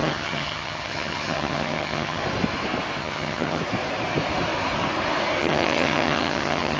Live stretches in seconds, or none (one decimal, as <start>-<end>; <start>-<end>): 2.2-3.0; 3.6-5.4